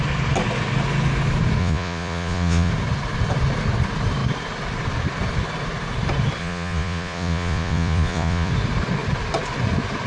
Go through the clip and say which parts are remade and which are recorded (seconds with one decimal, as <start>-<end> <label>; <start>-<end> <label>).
0.0-1.6 recorded; 1.6-2.7 remade; 2.7-6.4 recorded; 6.4-8.5 remade; 8.5-10.1 recorded